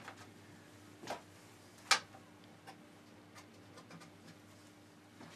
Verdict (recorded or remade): recorded